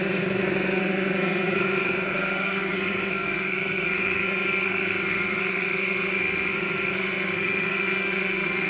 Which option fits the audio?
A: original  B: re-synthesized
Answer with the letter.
B